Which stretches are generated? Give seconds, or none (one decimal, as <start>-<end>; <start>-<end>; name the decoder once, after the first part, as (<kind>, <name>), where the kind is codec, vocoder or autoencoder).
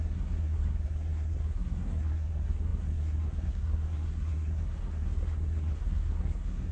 0.0-6.7 (codec, SNAC)